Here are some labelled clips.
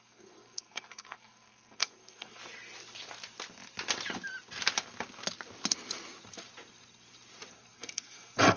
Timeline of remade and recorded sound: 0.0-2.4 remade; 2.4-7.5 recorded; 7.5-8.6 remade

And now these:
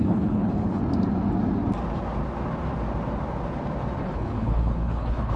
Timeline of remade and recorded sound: 0.0-0.8 remade; 0.8-4.0 recorded; 4.0-5.4 remade

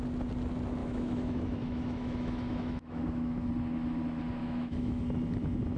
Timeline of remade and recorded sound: 0.0-0.8 recorded; 0.8-3.5 remade; 3.5-4.4 recorded; 4.4-5.0 remade; 5.0-5.8 recorded

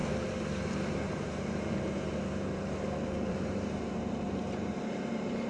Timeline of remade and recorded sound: 0.0-3.3 recorded; 3.3-5.5 remade